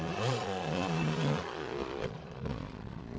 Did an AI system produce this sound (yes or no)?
yes